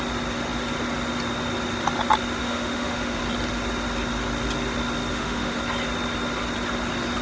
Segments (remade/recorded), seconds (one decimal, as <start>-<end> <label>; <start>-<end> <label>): 0.0-2.4 recorded; 2.4-3.2 remade; 3.2-5.1 recorded; 5.1-5.6 remade; 5.6-7.2 recorded